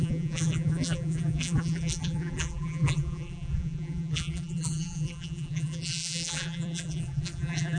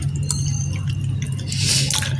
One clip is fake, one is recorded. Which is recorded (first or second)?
second